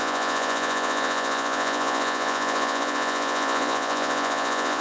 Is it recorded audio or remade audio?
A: remade